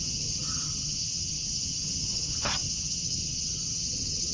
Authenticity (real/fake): fake